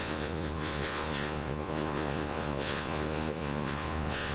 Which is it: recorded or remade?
remade